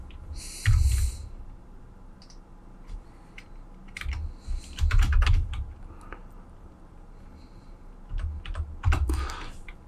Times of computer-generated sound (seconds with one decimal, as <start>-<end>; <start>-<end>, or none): 1.2-1.8